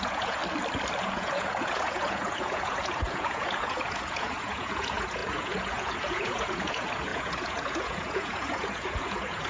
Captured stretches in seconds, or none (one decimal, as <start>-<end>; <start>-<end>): 0.4-1.0

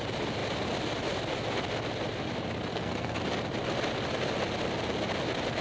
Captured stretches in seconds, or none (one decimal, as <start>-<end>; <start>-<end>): 0.0-2.7; 3.2-5.6

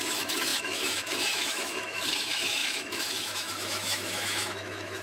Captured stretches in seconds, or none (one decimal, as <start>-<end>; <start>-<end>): none